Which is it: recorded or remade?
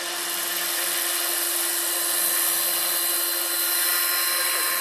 recorded